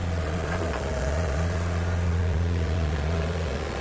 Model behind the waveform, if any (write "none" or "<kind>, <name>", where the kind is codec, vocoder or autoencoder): vocoder, Vocos